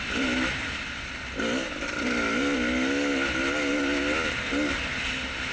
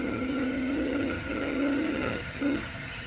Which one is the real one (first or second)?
first